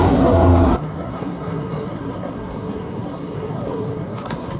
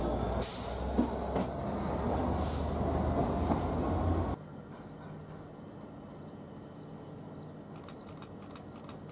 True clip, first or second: second